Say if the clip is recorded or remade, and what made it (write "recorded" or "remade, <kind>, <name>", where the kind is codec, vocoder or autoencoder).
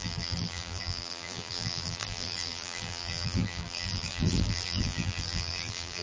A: remade, vocoder, BigVGAN v2